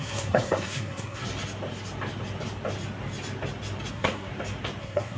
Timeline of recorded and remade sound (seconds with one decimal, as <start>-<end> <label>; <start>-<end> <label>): 0.0-1.2 remade; 1.2-3.9 recorded; 3.9-4.3 remade; 4.3-4.8 recorded; 4.8-5.2 remade